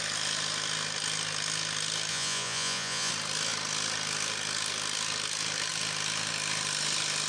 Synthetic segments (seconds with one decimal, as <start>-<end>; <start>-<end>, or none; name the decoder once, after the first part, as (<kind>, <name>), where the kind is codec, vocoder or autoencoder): 2.1-3.1 (vocoder, Vocos)